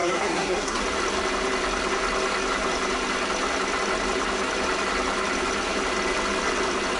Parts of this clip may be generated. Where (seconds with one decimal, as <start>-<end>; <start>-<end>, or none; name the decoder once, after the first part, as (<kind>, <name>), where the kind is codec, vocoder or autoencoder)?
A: 0.0-0.8 (codec, SNAC)

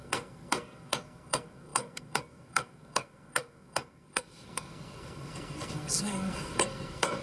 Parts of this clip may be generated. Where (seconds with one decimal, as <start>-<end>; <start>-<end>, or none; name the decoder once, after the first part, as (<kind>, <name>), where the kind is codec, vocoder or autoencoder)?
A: 0.0-7.2 (codec, SNAC)